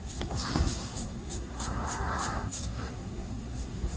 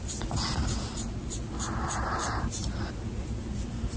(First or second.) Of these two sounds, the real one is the second